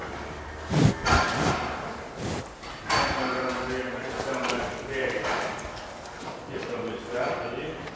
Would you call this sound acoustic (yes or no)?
yes